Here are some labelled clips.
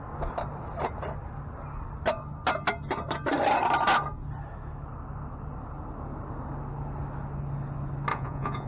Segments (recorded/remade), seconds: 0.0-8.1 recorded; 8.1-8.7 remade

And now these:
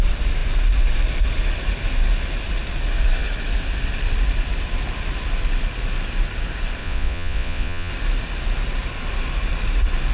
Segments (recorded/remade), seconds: 0.0-6.8 recorded; 6.8-7.9 remade; 7.9-10.1 recorded

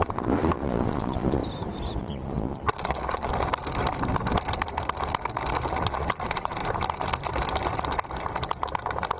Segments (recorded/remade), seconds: 0.0-1.4 remade; 1.4-2.0 recorded; 2.0-3.3 remade; 3.3-5.8 recorded; 5.8-6.6 remade; 6.6-9.2 recorded

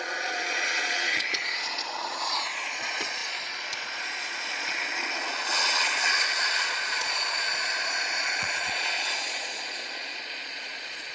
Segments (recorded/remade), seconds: 0.0-11.1 remade

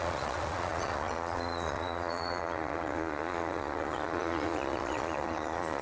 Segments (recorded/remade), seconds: 0.0-5.8 remade

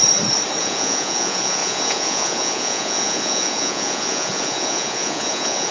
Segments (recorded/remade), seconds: 0.0-0.6 recorded; 0.6-5.7 remade

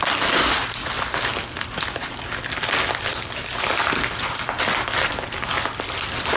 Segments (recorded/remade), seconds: 0.0-6.4 recorded

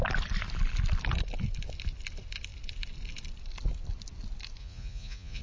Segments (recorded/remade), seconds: 0.0-4.6 recorded; 4.6-5.4 remade